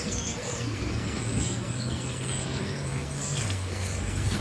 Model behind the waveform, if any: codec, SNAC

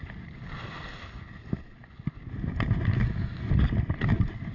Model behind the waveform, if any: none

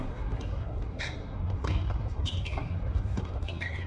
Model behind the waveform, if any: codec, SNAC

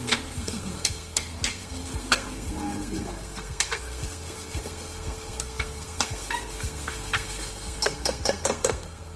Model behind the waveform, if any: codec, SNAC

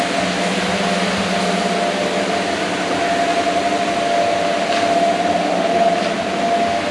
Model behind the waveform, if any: none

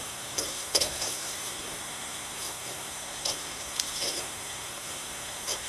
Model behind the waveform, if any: codec, SNAC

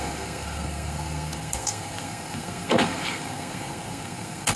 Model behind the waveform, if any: codec, SNAC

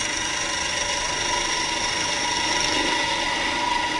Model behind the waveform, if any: none